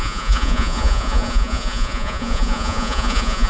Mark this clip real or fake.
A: fake